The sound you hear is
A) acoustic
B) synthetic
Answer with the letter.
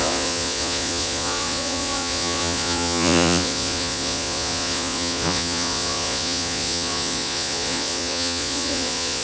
B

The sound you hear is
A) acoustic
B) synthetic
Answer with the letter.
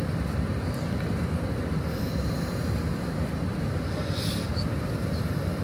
A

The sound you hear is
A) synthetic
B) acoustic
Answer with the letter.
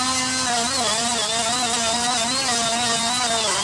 B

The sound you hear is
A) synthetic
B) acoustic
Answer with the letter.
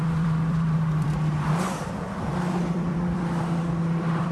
A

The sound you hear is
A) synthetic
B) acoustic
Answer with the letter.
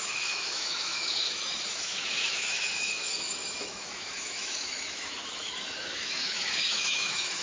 A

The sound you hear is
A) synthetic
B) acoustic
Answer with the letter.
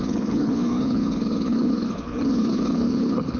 A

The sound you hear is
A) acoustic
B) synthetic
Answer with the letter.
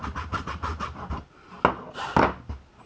A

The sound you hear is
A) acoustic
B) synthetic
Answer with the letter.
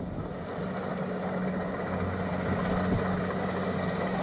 A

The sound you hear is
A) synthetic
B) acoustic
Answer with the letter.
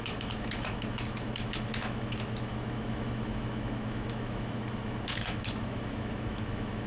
A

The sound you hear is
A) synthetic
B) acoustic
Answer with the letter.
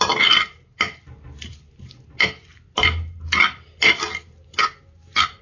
B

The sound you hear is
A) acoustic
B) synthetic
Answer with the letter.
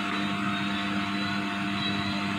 A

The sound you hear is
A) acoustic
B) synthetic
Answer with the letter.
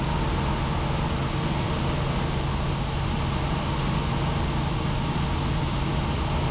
A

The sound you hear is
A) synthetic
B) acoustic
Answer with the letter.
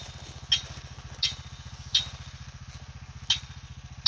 B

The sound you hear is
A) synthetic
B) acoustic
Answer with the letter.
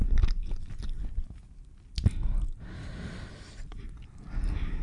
B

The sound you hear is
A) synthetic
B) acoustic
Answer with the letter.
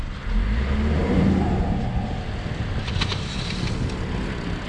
B